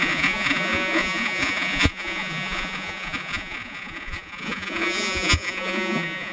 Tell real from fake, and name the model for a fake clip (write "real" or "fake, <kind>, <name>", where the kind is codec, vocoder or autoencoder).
fake, vocoder, Vocos